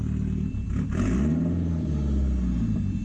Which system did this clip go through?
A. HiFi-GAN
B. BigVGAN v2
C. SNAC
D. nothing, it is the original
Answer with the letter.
D